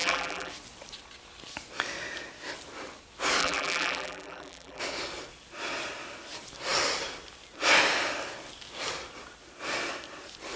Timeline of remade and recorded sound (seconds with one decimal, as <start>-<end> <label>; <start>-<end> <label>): 0.0-0.5 remade; 0.5-3.4 recorded; 3.4-4.8 remade; 4.8-10.6 recorded